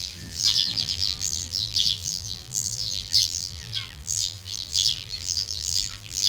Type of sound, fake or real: fake